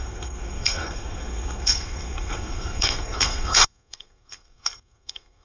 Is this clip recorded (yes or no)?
no